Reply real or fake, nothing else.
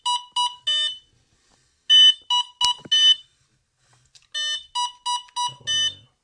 real